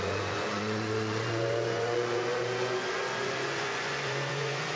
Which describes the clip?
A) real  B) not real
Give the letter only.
B